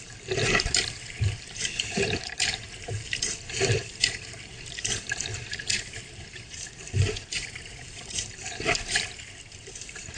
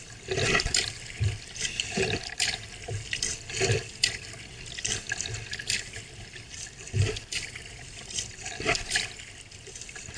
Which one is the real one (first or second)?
second